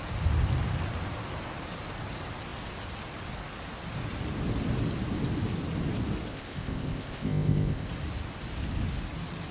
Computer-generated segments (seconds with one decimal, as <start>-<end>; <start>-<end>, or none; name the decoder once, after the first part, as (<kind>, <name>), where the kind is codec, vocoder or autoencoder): 6.3-7.9 (codec, ZipCodec)